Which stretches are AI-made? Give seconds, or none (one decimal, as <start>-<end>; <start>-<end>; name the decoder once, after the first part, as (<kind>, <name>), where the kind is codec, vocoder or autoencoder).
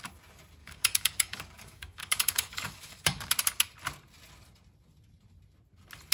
0.6-3.3 (codec, DAC)